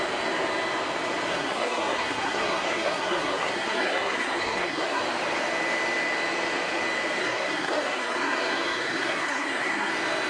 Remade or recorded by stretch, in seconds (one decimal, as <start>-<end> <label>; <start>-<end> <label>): 0.0-1.3 recorded; 1.3-5.0 remade; 5.0-7.2 recorded; 7.2-9.9 remade; 9.9-10.3 recorded